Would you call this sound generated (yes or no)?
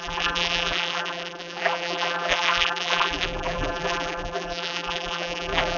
yes